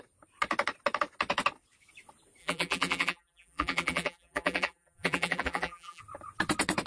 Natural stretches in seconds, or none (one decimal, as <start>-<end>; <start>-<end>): 0.0-2.4; 6.0-6.9